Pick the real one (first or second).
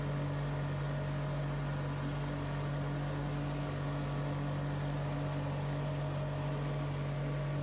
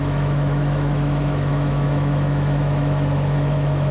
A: first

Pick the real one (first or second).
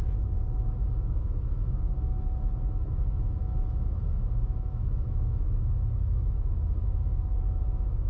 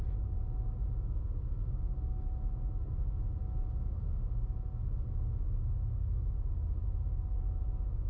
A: second